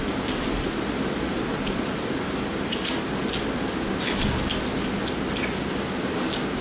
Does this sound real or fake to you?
real